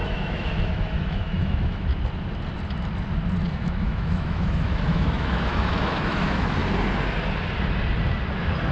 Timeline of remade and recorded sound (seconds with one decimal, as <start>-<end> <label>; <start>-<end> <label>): 0.0-1.9 remade; 1.9-3.5 recorded; 3.5-6.6 remade; 6.6-8.7 recorded